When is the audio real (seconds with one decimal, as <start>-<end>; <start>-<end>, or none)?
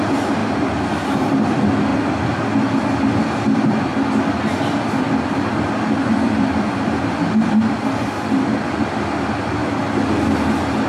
0.0-10.9